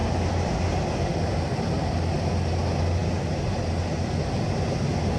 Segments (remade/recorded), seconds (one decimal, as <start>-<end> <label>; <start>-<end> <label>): 0.0-5.2 recorded